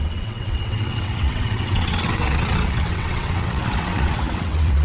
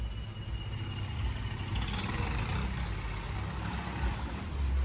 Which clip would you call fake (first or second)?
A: first